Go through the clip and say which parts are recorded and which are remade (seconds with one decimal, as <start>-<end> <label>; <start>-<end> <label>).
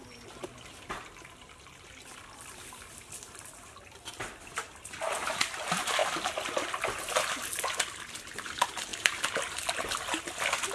0.0-10.7 recorded